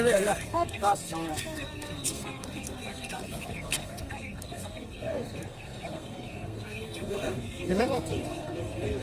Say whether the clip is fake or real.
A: fake